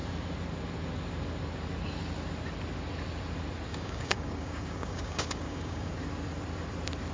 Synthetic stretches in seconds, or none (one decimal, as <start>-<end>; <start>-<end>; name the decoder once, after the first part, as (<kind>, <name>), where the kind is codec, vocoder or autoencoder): 3.7-5.9 (codec, DAC)